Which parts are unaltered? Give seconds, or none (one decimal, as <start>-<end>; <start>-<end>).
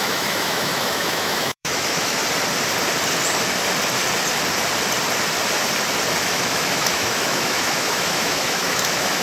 2.2-6.2